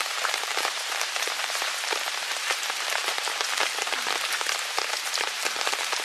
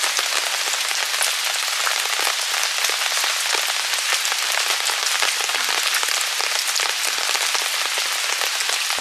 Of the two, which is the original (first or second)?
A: second